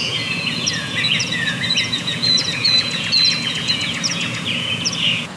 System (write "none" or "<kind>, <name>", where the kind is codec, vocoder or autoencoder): vocoder, Vocos